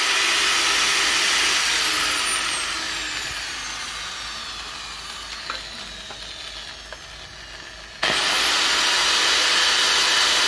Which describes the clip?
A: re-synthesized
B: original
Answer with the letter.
B